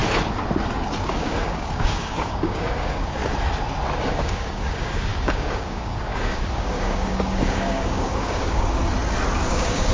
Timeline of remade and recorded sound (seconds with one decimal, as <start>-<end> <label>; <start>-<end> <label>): 0.0-1.0 recorded; 1.0-3.2 remade; 3.2-4.1 recorded; 4.1-8.8 remade; 8.8-9.4 recorded; 9.4-9.9 remade

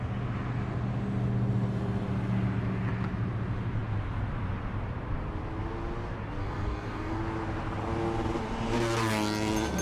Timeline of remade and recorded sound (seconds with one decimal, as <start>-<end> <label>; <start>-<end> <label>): 0.0-6.4 recorded; 6.4-7.2 remade; 7.2-9.8 recorded

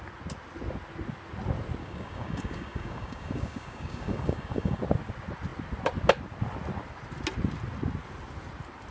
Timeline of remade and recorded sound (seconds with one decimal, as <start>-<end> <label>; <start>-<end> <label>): 0.0-1.8 recorded; 1.8-4.8 remade; 4.8-8.9 recorded